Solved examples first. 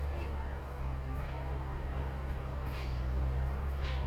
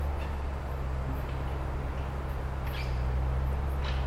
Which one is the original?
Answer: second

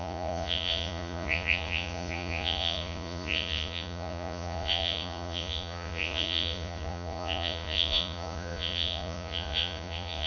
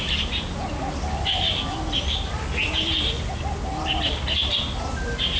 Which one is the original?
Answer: second